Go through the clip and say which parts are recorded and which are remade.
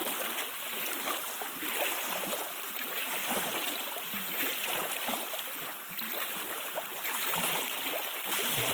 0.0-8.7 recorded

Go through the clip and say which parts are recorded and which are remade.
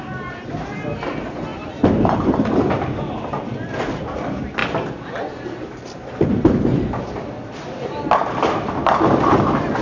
0.0-9.8 recorded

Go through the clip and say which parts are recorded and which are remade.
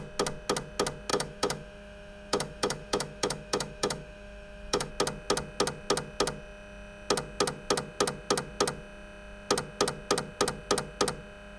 0.0-1.1 recorded; 1.1-4.9 remade; 4.9-11.6 recorded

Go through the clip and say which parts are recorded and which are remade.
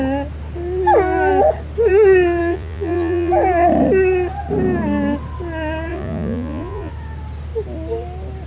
0.0-2.4 recorded; 2.4-3.3 remade; 3.3-5.9 recorded; 5.9-6.9 remade; 6.9-8.5 recorded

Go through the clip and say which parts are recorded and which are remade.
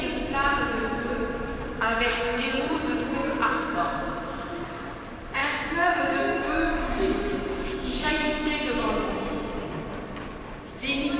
0.0-1.5 recorded; 1.5-2.6 remade; 2.6-5.4 recorded; 5.4-8.1 remade; 8.1-11.2 recorded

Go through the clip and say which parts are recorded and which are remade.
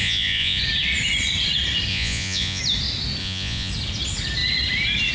0.0-0.6 remade; 0.6-1.9 recorded; 1.9-2.6 remade; 2.6-3.2 recorded; 3.2-3.7 remade; 3.7-5.1 recorded